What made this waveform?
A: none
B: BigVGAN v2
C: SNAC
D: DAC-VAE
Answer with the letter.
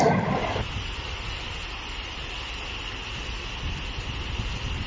B